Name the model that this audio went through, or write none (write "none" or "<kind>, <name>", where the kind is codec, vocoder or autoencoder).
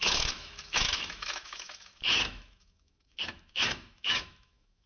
autoencoder, DAC-VAE